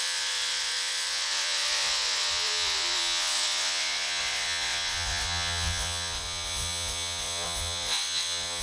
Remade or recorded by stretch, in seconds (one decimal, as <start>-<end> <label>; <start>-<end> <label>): 0.0-8.6 remade